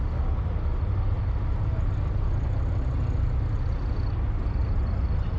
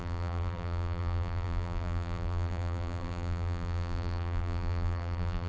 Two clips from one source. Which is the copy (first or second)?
second